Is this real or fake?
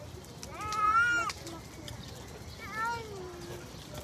real